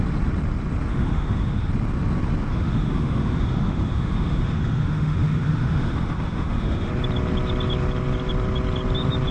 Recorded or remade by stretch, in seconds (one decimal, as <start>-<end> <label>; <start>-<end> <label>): 0.0-0.9 recorded; 0.9-1.7 remade; 1.7-2.5 recorded; 2.5-6.9 remade; 6.9-9.3 recorded